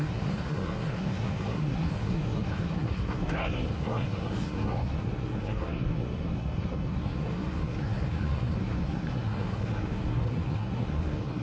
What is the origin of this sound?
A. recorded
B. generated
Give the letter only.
B